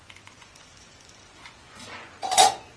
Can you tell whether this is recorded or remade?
remade